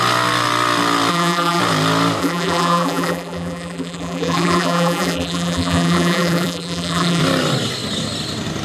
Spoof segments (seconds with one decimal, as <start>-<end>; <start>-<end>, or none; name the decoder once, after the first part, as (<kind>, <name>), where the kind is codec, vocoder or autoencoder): 1.1-1.6 (vocoder, BigVGAN v2); 2.2-7.2